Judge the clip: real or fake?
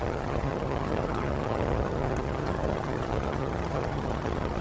fake